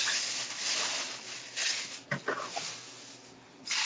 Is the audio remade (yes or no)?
no